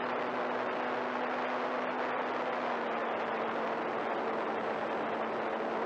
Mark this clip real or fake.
real